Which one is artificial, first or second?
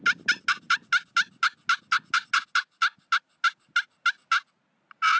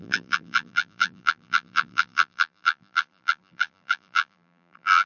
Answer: second